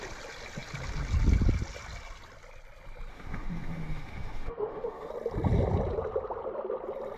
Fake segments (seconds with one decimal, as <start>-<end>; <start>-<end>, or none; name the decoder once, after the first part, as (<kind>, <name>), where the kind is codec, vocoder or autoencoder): 3.1-5.1 (autoencoder, DAC-VAE)